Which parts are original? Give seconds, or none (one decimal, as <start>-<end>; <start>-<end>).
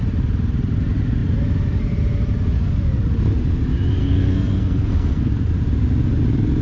0.0-4.0; 5.3-6.6